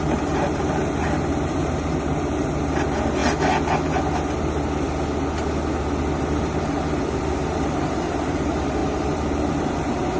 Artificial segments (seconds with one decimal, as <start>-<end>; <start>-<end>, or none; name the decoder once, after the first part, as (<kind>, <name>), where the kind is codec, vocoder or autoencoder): 0.0-3.2 (vocoder, BigVGAN v2); 6.2-10.2